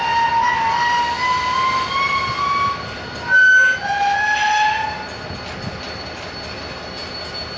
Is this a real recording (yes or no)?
yes